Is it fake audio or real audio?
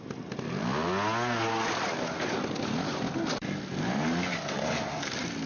real